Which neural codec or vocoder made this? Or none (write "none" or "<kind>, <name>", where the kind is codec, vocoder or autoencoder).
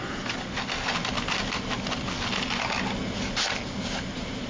none